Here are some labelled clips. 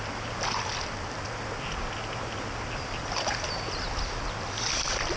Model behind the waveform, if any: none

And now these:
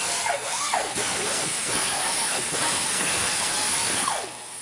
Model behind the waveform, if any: codec, SNAC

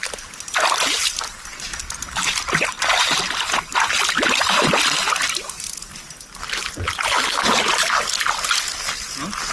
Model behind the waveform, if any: none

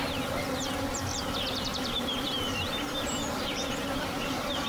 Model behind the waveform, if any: vocoder, BigVGAN v2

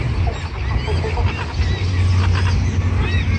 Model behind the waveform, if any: none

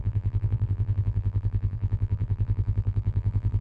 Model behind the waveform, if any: vocoder, BigVGAN v2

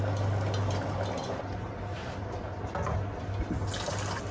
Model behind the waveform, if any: none